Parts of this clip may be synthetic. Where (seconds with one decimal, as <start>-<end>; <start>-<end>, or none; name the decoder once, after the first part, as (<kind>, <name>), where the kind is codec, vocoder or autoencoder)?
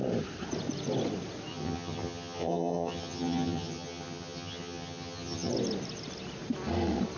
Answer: 1.5-5.5 (vocoder, HiFi-GAN)